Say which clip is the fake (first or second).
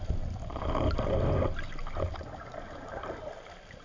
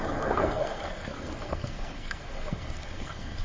second